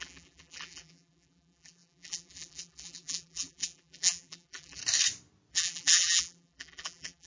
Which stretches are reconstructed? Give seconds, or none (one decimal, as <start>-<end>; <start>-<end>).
0.0-4.8; 5.5-7.3